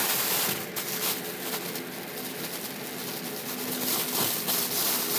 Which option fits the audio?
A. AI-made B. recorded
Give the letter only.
B